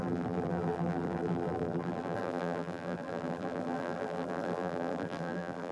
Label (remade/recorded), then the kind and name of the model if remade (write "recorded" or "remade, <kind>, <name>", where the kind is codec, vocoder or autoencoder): remade, vocoder, BigVGAN v2